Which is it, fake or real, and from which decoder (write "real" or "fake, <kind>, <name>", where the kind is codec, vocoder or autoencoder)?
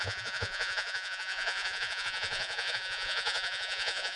fake, vocoder, Vocos